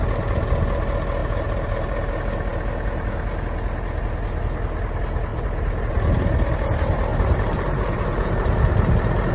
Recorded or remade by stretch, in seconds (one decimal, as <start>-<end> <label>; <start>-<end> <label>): 0.0-1.2 recorded; 1.2-2.1 remade; 2.1-5.3 recorded; 5.3-5.9 remade; 5.9-7.1 recorded; 7.1-9.3 remade